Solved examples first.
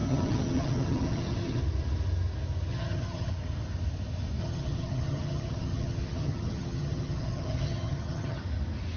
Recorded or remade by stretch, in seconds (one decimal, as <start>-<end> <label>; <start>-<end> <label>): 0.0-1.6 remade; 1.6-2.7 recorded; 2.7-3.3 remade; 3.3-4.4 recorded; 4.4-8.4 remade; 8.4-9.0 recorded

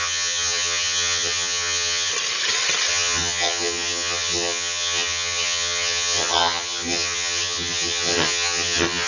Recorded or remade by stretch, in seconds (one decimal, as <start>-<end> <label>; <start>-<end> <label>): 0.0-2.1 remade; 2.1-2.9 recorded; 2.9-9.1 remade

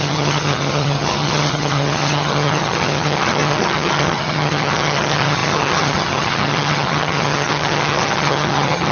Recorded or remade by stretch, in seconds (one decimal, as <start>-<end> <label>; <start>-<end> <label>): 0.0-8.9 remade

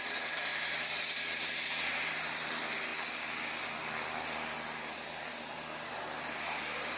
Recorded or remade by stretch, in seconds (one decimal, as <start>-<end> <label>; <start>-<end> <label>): 0.0-7.0 recorded

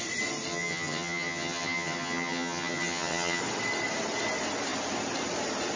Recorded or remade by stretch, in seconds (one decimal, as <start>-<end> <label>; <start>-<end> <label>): 0.0-0.5 recorded; 0.5-3.4 remade; 3.4-5.8 recorded